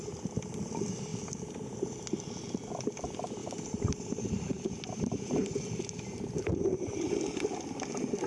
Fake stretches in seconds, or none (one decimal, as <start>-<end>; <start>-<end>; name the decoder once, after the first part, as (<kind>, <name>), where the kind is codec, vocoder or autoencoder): 3.4-7.1 (vocoder, BigVGAN v2)